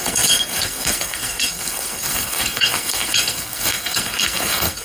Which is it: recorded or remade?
remade